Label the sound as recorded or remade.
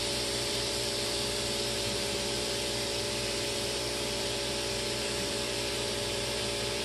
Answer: remade